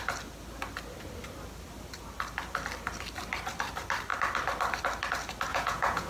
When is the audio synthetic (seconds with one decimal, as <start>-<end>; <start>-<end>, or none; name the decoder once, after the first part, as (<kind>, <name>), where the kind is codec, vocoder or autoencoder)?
5.5-6.1 (vocoder, Vocos)